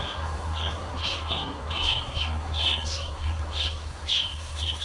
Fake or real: fake